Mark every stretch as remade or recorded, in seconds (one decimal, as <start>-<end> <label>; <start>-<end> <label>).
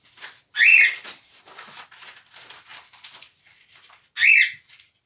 0.0-0.7 recorded; 0.7-1.4 remade; 1.4-5.1 recorded